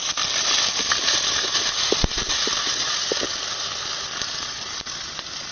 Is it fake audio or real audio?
real